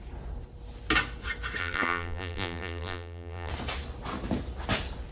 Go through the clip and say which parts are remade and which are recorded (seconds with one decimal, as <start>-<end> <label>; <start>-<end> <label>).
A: 0.0-1.6 recorded; 1.6-3.5 remade; 3.5-5.1 recorded